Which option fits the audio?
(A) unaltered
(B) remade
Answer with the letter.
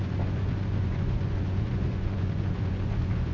B